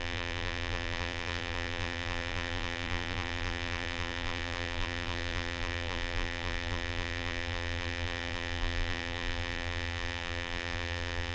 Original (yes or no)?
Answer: no